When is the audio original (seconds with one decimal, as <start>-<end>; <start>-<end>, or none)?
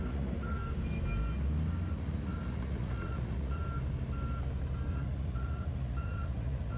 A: 0.6-1.9; 3.6-4.9